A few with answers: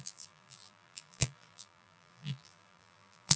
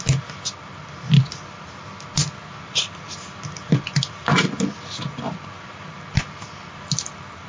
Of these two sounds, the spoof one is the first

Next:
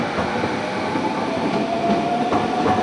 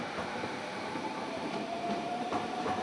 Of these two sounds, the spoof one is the second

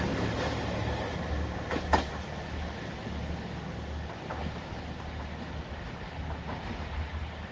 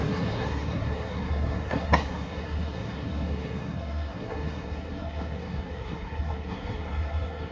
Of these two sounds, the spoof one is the second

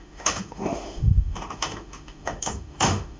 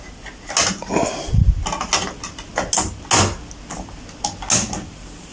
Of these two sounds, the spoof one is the first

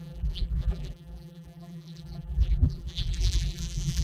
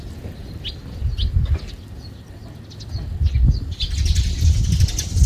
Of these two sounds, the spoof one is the first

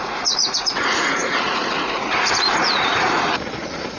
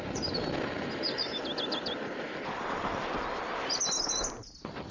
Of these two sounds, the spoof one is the first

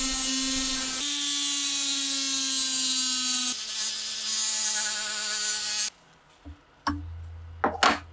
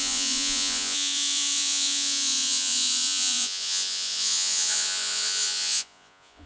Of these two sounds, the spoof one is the second